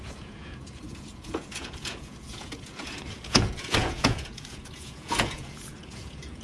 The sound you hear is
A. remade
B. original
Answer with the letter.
A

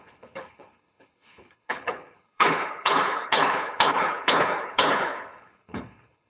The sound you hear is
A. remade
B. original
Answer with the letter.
A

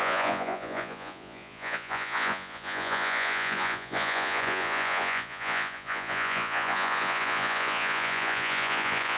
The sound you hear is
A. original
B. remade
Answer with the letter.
B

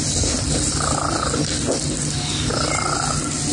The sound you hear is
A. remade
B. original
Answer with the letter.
B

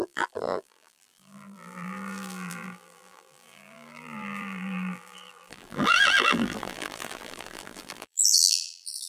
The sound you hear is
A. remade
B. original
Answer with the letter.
A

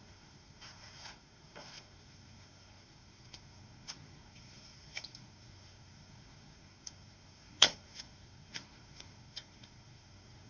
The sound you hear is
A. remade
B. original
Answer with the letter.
A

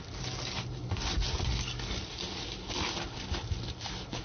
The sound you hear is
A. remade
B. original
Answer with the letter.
B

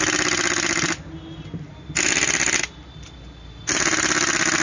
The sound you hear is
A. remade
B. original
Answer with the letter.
B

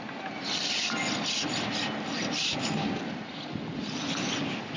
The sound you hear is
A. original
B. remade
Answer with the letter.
A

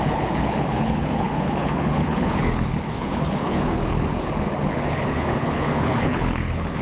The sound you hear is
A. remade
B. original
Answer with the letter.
A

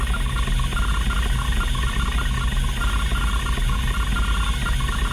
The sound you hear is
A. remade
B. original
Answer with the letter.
B